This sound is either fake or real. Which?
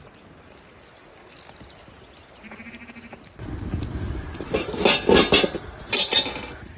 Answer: real